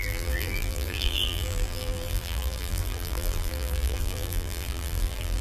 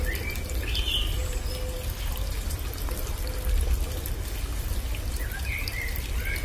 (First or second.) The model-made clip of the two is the first